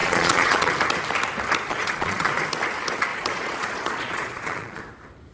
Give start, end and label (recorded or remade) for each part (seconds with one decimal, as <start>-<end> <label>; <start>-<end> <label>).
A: 0.0-0.7 remade; 0.7-1.7 recorded; 1.7-2.4 remade; 2.4-3.1 recorded; 3.1-4.8 remade; 4.8-5.3 recorded